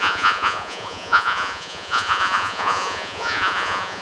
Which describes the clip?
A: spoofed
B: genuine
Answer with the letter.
A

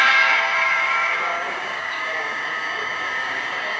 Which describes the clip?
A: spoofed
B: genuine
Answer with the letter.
A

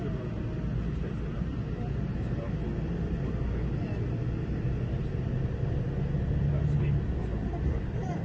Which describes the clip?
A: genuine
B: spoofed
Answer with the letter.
A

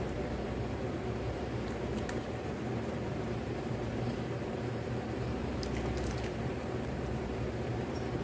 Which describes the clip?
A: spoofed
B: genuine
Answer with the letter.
A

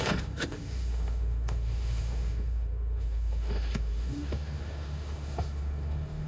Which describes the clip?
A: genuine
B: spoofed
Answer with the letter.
B